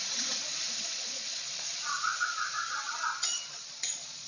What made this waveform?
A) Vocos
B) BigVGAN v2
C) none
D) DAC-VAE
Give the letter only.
A